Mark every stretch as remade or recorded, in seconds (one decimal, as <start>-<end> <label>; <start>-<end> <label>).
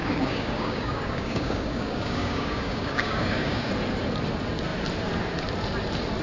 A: 0.0-3.7 remade; 3.7-6.2 recorded